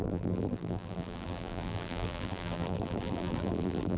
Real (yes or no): no